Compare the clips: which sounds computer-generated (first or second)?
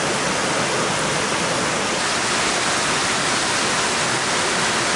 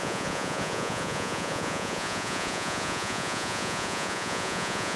second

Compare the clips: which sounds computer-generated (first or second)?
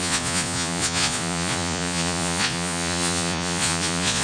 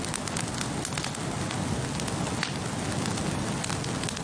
first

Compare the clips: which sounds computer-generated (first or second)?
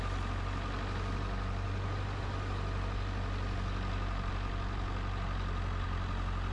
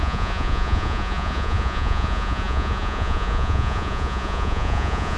second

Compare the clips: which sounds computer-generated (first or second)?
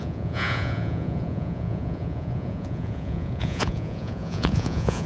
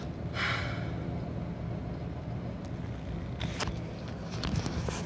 first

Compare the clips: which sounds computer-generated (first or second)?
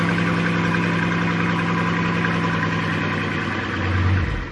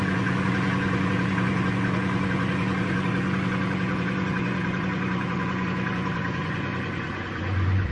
second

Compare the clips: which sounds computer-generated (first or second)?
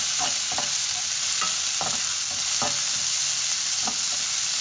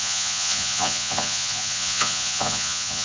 second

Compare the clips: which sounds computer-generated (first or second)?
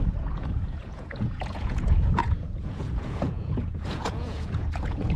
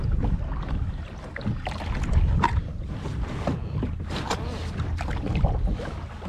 first